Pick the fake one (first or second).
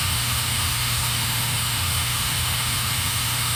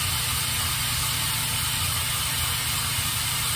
first